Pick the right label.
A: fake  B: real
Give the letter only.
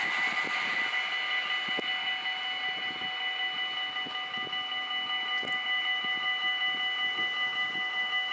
B